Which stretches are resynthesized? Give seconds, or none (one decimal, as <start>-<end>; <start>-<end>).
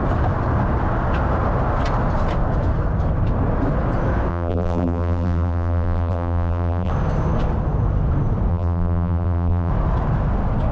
4.3-6.9; 8.5-9.7